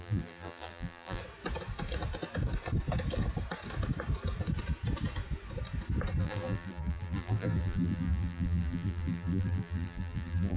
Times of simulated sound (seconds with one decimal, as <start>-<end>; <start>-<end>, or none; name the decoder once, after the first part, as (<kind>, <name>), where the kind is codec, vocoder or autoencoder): 0.0-1.2 (vocoder, BigVGAN v2); 6.2-10.6